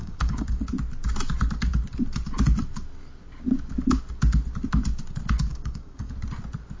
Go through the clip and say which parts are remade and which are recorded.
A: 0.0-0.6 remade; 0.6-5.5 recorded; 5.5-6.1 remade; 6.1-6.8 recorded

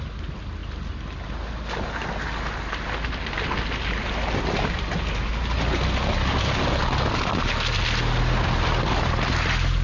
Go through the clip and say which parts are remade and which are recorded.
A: 0.0-9.8 recorded

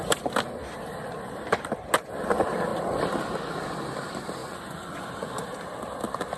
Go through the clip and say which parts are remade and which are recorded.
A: 0.0-4.4 recorded; 4.4-5.3 remade; 5.3-6.4 recorded

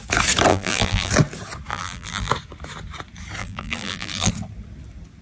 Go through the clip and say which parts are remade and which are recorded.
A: 0.0-0.5 recorded; 0.5-1.1 remade; 1.1-1.7 recorded; 1.7-2.3 remade; 2.3-3.4 recorded; 3.4-4.3 remade; 4.3-5.2 recorded

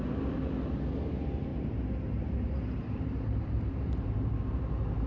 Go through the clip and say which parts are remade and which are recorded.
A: 0.0-1.5 recorded; 1.5-4.4 remade; 4.4-5.1 recorded

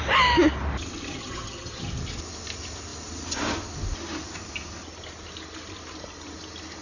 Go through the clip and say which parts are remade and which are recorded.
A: 0.0-1.2 recorded; 1.2-1.8 remade; 1.8-6.8 recorded